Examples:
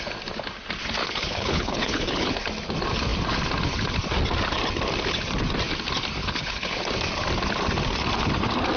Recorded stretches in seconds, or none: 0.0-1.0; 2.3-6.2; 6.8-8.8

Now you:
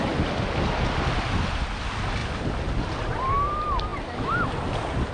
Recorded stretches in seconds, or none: 0.0-2.2; 2.9-5.1